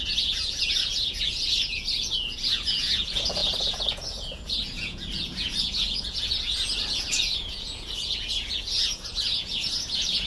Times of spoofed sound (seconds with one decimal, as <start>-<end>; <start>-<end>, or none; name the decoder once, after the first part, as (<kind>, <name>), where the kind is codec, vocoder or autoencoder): 0.0-10.3 (vocoder, Vocos)